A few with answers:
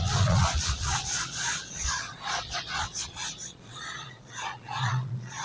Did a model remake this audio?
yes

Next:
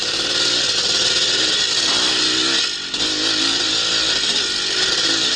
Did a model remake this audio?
no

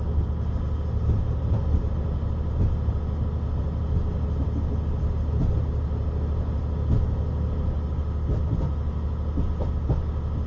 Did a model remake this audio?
no